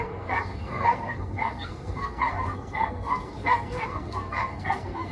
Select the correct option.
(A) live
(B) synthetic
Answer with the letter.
B